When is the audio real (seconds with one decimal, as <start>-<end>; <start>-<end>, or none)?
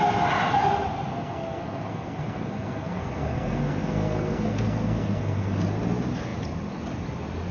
0.0-1.1; 5.6-7.5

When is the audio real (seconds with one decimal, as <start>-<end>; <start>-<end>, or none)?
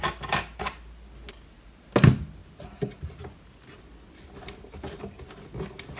0.0-6.0